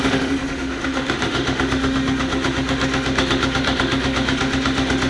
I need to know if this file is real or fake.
fake